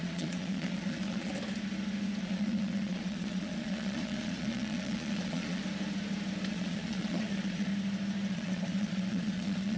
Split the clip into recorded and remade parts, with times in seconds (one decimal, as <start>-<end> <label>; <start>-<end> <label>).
0.0-1.3 remade; 1.3-2.2 recorded; 2.2-5.6 remade; 5.6-6.5 recorded; 6.5-7.7 remade; 7.7-8.3 recorded; 8.3-9.8 remade